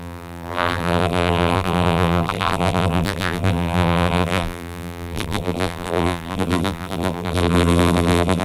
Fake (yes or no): yes